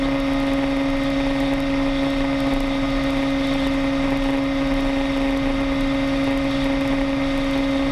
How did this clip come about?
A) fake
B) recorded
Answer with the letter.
B